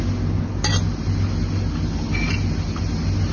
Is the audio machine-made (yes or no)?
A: no